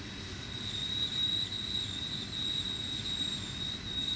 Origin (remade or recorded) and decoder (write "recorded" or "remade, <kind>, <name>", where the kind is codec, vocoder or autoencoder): recorded